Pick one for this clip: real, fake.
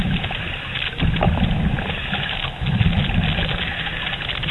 real